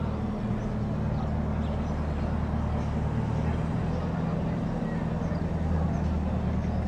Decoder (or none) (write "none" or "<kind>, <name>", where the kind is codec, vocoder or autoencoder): none